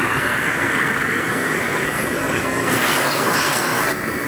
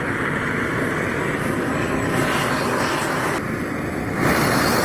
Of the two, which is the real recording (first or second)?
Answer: second